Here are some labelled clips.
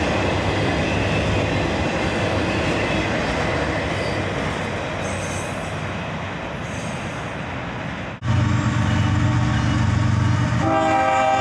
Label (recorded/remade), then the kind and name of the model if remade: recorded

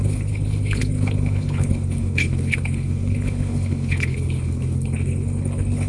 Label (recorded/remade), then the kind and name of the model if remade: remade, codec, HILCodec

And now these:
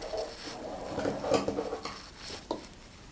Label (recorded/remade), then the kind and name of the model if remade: recorded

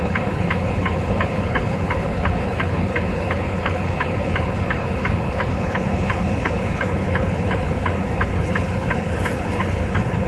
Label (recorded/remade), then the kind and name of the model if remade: remade, codec, HILCodec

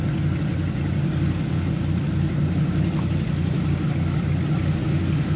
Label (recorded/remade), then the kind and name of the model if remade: recorded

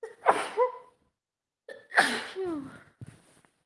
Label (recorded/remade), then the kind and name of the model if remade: recorded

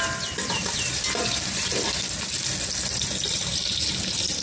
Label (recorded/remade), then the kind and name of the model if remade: recorded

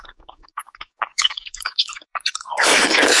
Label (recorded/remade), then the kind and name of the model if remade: remade, codec, DAC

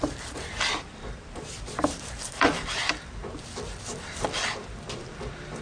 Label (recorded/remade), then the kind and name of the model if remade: remade, vocoder, BigVGAN v2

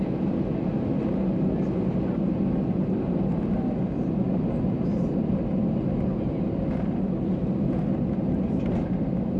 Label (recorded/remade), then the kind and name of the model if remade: recorded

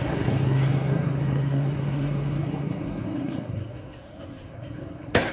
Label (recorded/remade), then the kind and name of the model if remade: remade, codec, SNAC